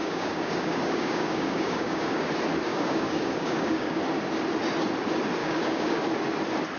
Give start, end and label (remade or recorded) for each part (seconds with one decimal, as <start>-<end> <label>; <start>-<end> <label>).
0.0-2.3 remade; 2.3-2.7 recorded; 2.7-4.0 remade; 4.0-5.4 recorded; 5.4-6.0 remade; 6.0-6.8 recorded